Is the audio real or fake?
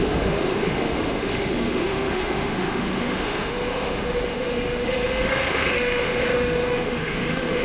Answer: fake